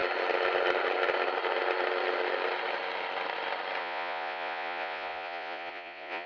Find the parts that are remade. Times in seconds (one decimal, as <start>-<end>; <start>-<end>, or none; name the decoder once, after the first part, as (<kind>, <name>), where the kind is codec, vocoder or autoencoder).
3.8-6.3 (vocoder, Vocos)